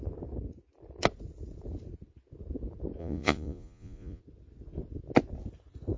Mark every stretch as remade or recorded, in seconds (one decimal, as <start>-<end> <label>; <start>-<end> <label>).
0.0-3.0 recorded; 3.0-4.2 remade; 4.2-6.0 recorded